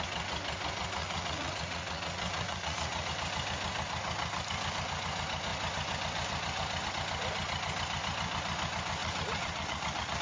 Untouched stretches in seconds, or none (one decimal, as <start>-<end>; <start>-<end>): 0.0-1.0; 3.1-9.0